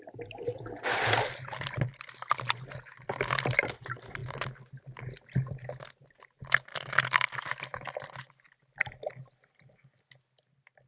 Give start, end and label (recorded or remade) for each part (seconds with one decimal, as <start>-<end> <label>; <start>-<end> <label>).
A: 0.0-10.9 recorded